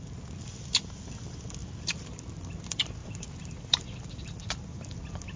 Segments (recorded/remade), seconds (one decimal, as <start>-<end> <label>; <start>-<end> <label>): 0.0-1.6 recorded; 1.6-2.2 remade; 2.2-3.0 recorded; 3.0-3.8 remade; 3.8-5.4 recorded